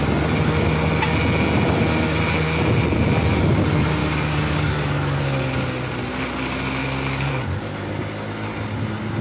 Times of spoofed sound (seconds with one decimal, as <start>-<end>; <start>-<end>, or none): 4.0-5.2; 6.8-7.9